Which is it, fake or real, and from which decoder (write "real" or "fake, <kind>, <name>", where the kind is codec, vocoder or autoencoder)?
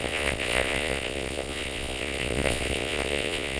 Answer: fake, vocoder, Vocos